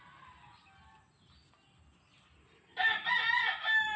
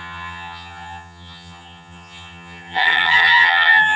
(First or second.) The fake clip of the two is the second